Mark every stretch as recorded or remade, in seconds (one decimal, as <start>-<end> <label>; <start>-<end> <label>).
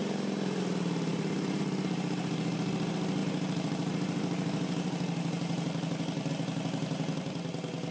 0.0-0.6 remade; 0.6-1.1 recorded; 1.1-2.7 remade; 2.7-3.2 recorded; 3.2-6.3 remade; 6.3-7.9 recorded